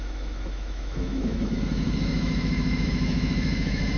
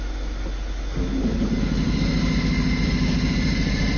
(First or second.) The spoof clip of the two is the first